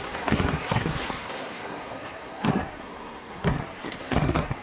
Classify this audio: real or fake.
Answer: fake